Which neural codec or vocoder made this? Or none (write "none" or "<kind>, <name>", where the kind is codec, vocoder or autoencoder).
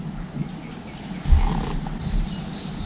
none